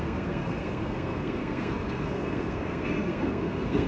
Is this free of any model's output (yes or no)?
no